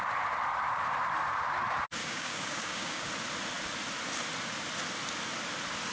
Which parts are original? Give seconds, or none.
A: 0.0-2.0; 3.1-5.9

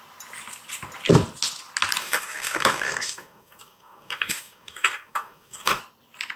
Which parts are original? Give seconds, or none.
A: 0.0-2.0; 5.8-6.4

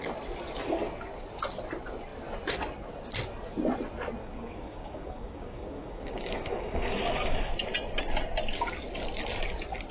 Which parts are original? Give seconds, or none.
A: 0.0-4.2; 7.5-9.9